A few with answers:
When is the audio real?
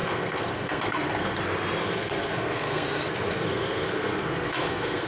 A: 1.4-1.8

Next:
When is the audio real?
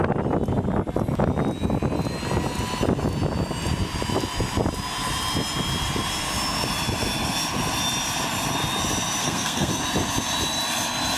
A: 0.0-9.2; 9.7-11.2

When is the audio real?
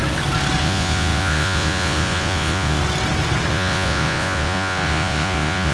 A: 0.0-0.6; 2.8-3.5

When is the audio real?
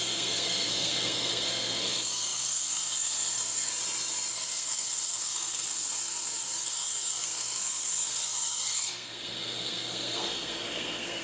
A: 3.7-4.3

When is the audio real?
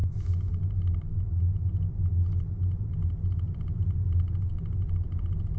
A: 1.7-5.6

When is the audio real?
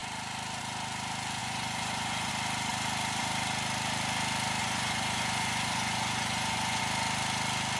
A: 0.0-1.4; 2.3-4.6; 6.8-7.8